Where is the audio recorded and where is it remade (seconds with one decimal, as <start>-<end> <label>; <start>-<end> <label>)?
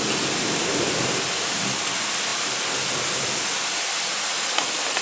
0.0-5.0 recorded